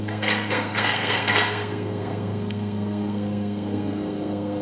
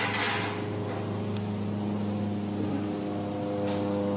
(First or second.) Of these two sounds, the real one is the second